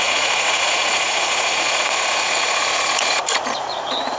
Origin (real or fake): fake